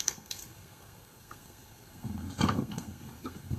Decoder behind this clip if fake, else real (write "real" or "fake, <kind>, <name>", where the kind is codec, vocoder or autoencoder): fake, codec, SNAC